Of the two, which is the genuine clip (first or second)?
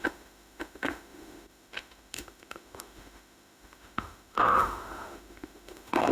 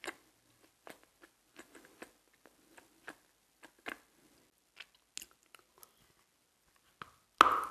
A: second